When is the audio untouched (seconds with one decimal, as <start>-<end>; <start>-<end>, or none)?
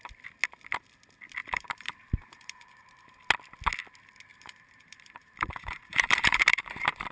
0.0-1.4; 3.2-4.3